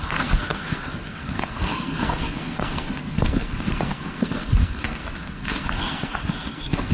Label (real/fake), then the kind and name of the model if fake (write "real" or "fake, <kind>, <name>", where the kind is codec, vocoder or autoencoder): fake, codec, SNAC